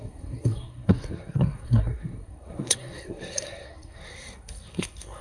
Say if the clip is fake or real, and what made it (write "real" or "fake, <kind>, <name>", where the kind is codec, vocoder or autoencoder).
fake, codec, SNAC